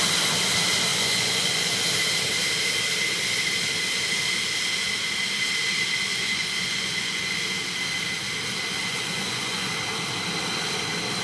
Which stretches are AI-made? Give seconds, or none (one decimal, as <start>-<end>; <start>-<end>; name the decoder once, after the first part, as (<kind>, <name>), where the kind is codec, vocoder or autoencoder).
0.9-1.7 (vocoder, Vocos); 6.1-7.4; 8.9-9.7